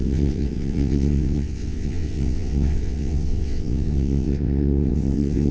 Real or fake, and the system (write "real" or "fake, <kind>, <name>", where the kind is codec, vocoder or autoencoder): fake, vocoder, WaveNeXt